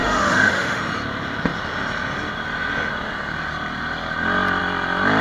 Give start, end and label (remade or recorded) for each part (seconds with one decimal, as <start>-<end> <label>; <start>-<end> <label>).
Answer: 0.0-0.8 remade; 0.8-5.2 recorded